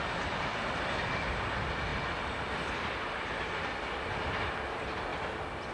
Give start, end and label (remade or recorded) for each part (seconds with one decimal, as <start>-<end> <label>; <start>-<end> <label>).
0.0-5.7 recorded